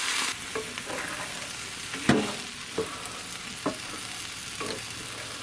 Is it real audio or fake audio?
real